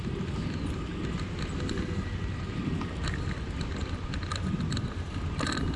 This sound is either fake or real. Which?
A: real